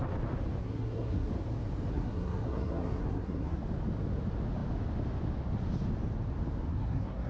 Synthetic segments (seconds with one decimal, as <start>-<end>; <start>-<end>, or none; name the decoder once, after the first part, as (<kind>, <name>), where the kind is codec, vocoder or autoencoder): 0.6-1.3 (codec, SNAC); 1.9-3.6; 6.7-7.3